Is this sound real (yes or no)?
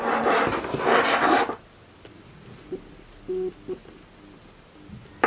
no